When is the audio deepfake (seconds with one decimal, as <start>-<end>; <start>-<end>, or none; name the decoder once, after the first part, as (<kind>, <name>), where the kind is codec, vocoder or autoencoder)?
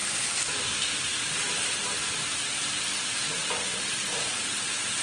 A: 0.0-2.8 (vocoder, BigVGAN v2); 3.4-4.5